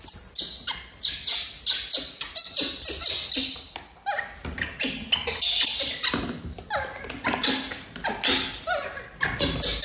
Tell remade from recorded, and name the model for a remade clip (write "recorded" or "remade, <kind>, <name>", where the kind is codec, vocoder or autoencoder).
recorded